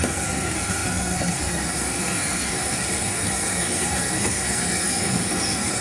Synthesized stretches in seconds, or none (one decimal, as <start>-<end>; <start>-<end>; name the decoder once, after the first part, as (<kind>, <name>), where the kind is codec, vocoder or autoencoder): 0.0-5.8 (codec, SNAC)